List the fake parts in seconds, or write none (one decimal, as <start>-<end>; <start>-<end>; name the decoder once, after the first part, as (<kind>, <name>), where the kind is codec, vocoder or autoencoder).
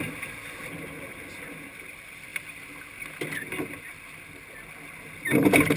none